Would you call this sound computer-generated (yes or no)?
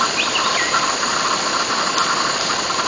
no